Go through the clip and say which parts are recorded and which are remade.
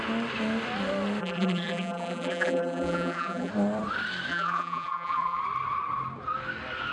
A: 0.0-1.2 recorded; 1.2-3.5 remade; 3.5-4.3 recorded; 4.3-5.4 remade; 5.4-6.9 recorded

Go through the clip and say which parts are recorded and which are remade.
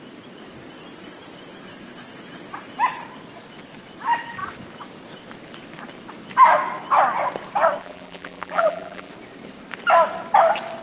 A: 0.0-7.8 recorded; 7.8-9.1 remade; 9.1-10.8 recorded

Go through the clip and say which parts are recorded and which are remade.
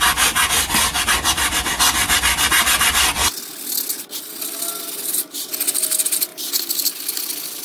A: 0.0-7.6 recorded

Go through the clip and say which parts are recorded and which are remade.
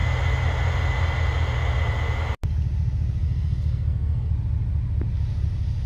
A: 0.0-3.2 recorded; 3.2-4.3 remade; 4.3-5.9 recorded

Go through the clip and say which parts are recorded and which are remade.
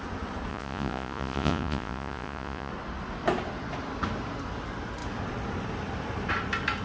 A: 0.0-0.5 recorded; 0.5-2.7 remade; 2.7-6.8 recorded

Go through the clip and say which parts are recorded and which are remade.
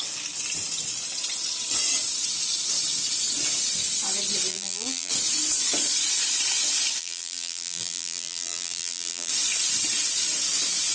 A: 0.0-4.5 recorded; 4.5-5.1 remade; 5.1-7.0 recorded; 7.0-9.3 remade; 9.3-10.9 recorded